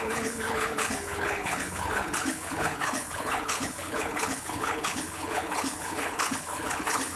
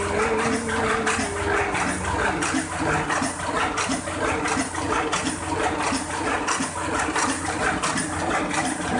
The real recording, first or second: second